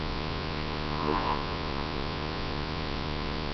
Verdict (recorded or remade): remade